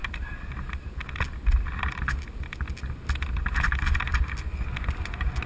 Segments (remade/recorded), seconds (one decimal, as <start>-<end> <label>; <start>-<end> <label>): 0.0-5.5 recorded